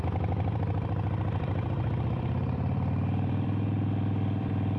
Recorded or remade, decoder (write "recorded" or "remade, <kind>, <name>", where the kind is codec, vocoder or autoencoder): remade, vocoder, BigVGAN v2